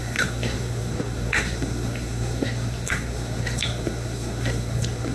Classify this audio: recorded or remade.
remade